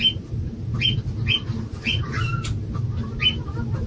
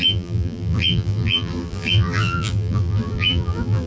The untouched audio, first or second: first